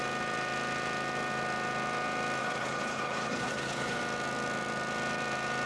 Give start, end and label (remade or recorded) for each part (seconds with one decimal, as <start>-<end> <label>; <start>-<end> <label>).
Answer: 0.0-2.4 recorded; 2.4-4.0 remade; 4.0-5.7 recorded